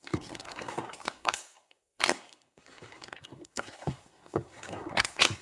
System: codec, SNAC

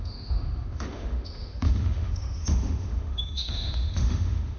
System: autoencoder, DAC-VAE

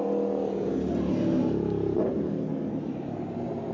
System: none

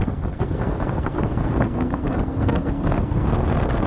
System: codec, SNAC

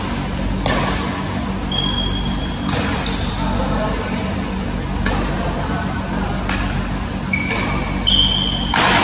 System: none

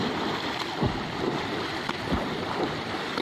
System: vocoder, BigVGAN v2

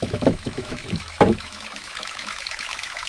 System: autoencoder, DAC-VAE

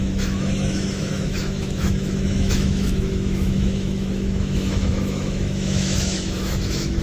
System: autoencoder, DAC-VAE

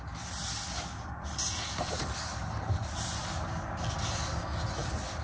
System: none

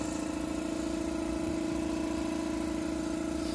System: none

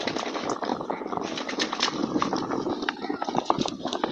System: none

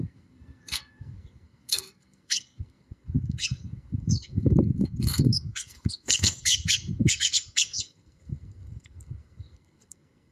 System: codec, SNAC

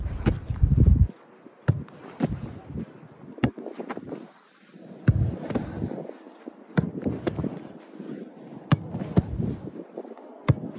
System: none